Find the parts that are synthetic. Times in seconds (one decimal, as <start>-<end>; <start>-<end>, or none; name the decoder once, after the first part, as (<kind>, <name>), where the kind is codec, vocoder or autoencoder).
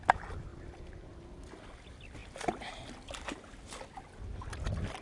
none